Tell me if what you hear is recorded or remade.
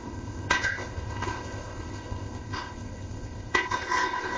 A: remade